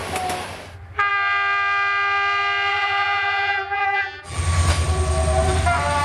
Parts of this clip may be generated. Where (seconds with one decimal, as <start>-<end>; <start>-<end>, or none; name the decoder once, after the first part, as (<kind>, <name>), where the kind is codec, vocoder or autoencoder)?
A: 2.7-4.4 (vocoder, BigVGAN v2)